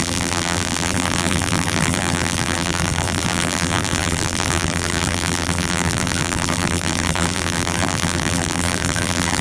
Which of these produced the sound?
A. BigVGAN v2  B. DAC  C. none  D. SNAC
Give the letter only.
A